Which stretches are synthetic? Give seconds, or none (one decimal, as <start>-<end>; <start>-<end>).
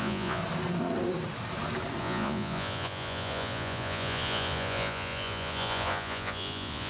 0.0-0.4; 2.0-6.9